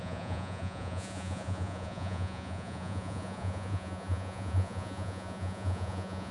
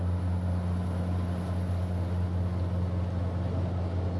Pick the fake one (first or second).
first